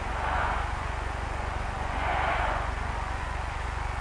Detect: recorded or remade remade